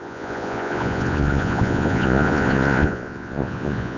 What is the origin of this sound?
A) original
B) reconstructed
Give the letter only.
B